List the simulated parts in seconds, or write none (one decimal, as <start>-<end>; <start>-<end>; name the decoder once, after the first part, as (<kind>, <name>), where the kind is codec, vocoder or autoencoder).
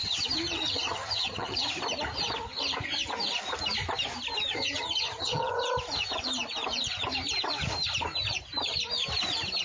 0.0-1.7 (vocoder, HiFi-GAN); 4.5-5.6